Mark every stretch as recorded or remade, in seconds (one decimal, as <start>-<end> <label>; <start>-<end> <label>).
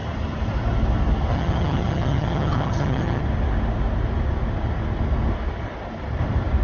0.0-1.3 recorded; 1.3-3.2 remade; 3.2-6.6 recorded